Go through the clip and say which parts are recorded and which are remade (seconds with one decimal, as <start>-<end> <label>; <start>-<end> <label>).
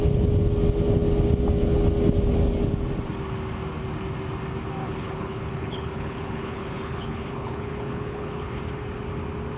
0.0-4.8 recorded; 4.8-8.6 remade; 8.6-9.6 recorded